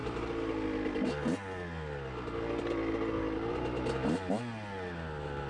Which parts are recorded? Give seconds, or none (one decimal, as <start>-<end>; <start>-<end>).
0.0-5.5